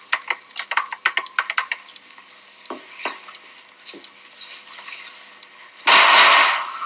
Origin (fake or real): real